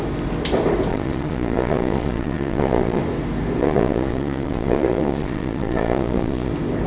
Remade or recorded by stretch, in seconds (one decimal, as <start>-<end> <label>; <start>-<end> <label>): 0.0-0.9 recorded; 0.9-3.0 remade; 3.0-3.6 recorded; 3.6-6.5 remade; 6.5-6.9 recorded